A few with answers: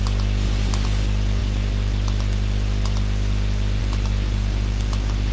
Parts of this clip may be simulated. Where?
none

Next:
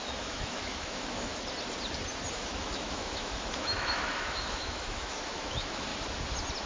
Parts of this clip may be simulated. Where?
0.0-1.3 (autoencoder, DAC-VAE); 2.3-5.9

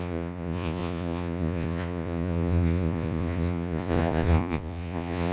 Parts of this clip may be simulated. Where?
0.0-5.3 (vocoder, Vocos)

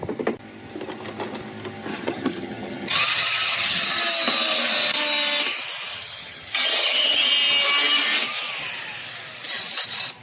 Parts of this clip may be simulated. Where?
1.9-4.0 (vocoder, HiFi-GAN); 5.9-7.3

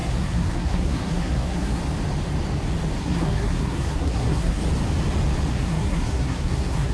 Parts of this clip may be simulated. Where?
0.0-1.8 (codec, SNAC); 3.0-4.6; 5.5-6.9